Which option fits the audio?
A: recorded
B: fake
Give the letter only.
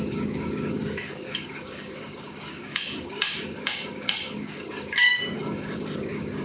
B